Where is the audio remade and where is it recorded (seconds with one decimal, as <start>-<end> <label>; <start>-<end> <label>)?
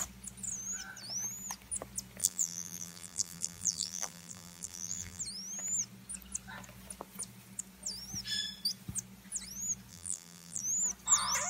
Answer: 0.0-2.2 recorded; 2.2-5.2 remade; 5.2-9.9 recorded; 9.9-10.6 remade; 10.6-11.5 recorded